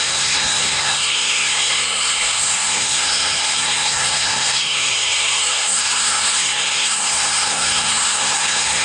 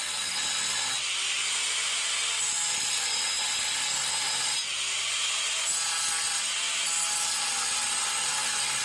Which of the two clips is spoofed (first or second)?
first